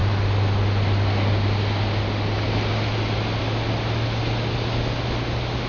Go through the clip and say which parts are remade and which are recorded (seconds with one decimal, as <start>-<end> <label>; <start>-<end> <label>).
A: 0.0-5.7 recorded